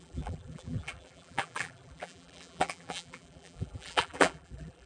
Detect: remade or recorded remade